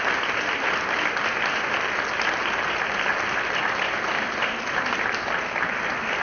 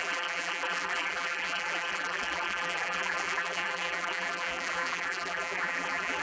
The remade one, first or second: second